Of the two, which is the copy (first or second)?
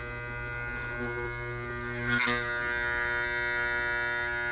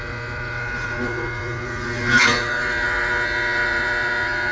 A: second